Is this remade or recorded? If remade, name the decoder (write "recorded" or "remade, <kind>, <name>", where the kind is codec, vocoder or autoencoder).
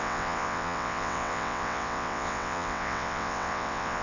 remade, vocoder, WaveNeXt